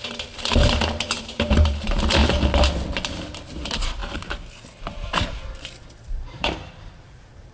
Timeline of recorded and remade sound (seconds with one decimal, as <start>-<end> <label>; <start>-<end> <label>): 0.0-2.2 remade; 2.2-3.5 recorded; 3.5-4.0 remade; 4.0-5.8 recorded; 5.8-7.5 remade